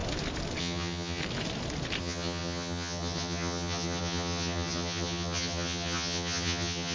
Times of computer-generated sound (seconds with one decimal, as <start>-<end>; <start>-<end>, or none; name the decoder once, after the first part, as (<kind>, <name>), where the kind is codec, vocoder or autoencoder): 0.6-1.2 (vocoder, HiFi-GAN); 2.0-6.9